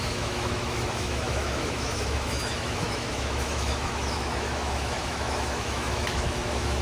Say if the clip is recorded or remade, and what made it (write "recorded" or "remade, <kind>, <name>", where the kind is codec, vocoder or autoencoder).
remade, autoencoder, DAC-VAE